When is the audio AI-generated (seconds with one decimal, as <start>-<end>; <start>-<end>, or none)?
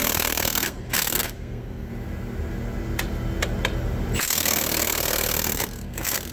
0.0-1.9; 4.2-6.3